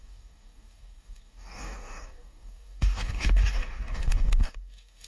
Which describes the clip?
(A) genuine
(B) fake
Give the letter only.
B